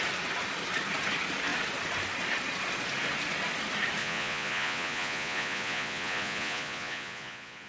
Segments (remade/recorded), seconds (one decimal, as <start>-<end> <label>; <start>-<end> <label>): 0.0-4.0 recorded; 4.0-7.7 remade